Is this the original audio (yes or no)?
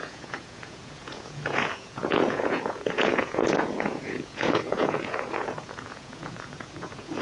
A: no